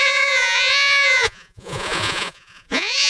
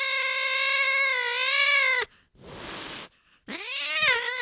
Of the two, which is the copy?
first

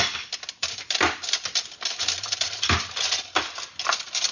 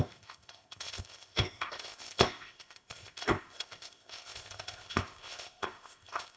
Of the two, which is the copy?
second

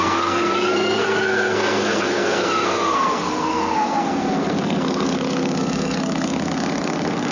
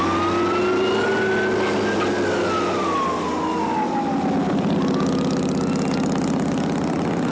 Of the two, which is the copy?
first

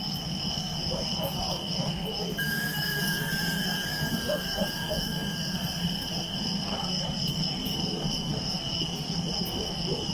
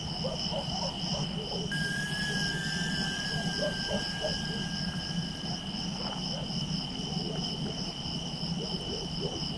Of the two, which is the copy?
first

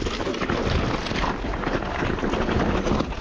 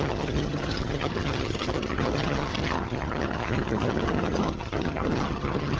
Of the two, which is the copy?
second